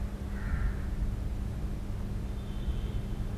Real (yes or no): yes